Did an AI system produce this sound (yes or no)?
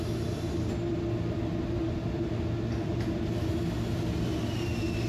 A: no